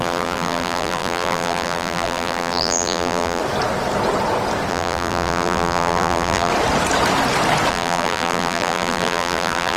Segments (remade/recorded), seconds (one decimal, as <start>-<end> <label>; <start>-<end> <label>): 0.0-3.4 remade; 3.4-4.7 recorded; 4.7-6.5 remade; 6.5-7.7 recorded; 7.7-9.8 remade

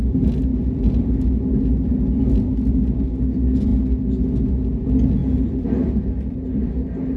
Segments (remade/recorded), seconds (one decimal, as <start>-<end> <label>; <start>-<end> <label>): 0.0-7.2 recorded